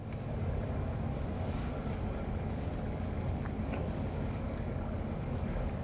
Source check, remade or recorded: remade